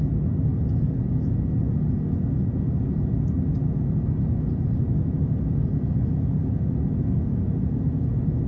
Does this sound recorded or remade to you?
recorded